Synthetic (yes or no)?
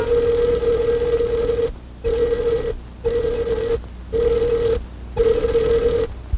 no